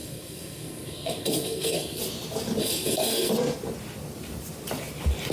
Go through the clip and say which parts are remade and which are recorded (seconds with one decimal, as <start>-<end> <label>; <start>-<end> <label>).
0.0-2.0 remade; 2.0-2.6 recorded; 2.6-3.3 remade; 3.3-5.3 recorded